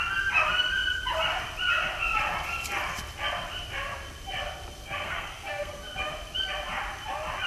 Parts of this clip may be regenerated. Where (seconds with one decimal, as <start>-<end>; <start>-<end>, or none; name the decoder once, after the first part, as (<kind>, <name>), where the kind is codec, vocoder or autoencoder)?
4.8-6.1 (codec, SNAC)